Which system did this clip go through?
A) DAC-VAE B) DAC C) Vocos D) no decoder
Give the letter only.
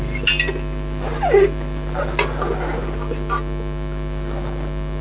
D